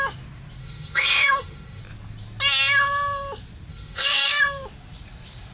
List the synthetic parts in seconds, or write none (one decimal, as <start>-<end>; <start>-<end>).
0.6-1.8; 3.7-4.4